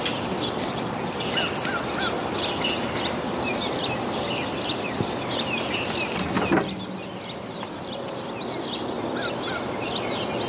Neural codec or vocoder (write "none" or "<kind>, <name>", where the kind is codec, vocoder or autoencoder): none